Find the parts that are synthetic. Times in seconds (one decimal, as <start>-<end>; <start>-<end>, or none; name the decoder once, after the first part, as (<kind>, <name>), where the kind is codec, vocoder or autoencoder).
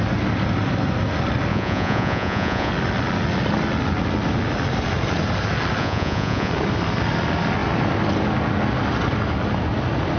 1.5-2.7 (vocoder, Vocos); 5.8-6.5